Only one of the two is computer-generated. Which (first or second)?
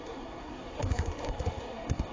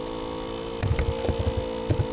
first